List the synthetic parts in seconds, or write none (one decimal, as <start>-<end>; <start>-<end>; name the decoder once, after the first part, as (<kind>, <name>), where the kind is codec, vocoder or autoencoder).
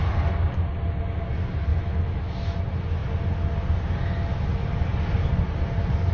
1.7-2.6 (autoencoder, DAC-VAE)